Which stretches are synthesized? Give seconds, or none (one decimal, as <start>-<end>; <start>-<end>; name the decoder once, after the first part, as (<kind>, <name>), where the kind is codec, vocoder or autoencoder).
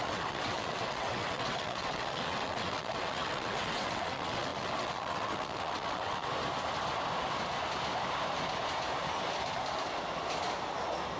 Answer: 0.0-6.3 (vocoder, WaveNeXt)